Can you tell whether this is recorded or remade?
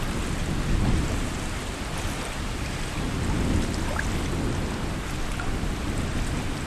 recorded